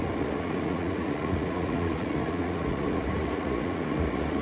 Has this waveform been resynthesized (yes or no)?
yes